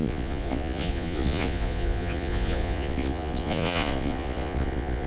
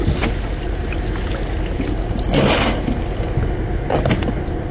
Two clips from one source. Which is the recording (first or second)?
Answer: second